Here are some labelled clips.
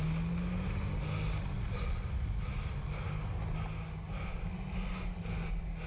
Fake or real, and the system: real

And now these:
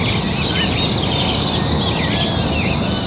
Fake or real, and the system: real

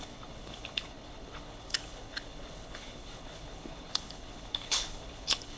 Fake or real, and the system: fake, codec, HILCodec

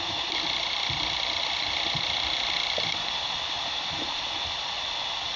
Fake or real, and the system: real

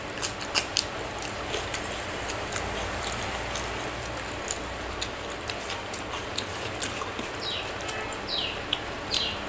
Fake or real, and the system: real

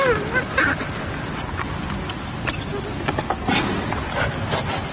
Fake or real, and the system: real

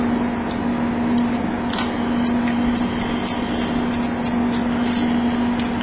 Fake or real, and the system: real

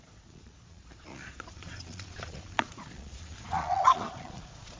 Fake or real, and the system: fake, vocoder, Vocos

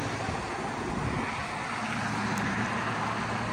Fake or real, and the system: real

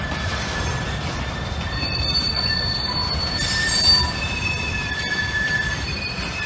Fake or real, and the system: fake, vocoder, BigVGAN v2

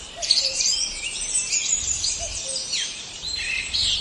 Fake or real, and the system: fake, vocoder, BigVGAN v2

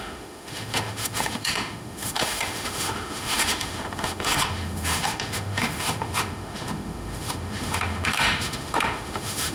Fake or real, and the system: fake, autoencoder, DAC-VAE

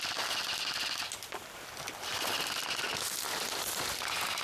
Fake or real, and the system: real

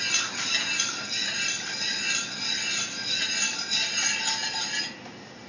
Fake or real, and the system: real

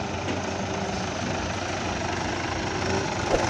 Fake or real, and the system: real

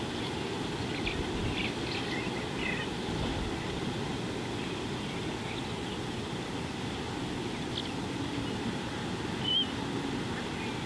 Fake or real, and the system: real